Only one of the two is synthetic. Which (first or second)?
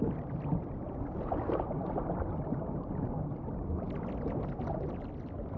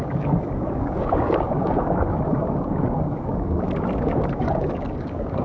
second